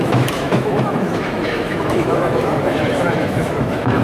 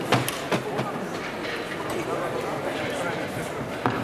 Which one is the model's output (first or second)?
first